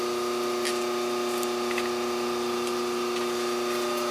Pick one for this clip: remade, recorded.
recorded